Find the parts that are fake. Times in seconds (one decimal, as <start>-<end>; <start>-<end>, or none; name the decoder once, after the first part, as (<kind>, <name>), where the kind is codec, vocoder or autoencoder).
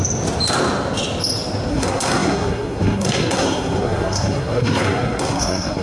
1.7-5.8 (codec, SNAC)